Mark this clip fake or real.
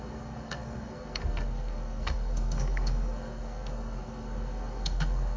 fake